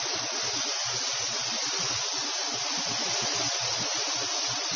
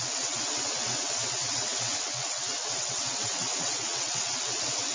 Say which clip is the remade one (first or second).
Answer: second